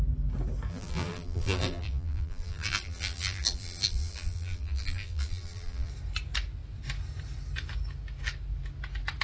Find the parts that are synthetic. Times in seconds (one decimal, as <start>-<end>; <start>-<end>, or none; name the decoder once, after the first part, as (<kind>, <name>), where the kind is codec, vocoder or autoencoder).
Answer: 0.7-5.9 (vocoder, BigVGAN v2)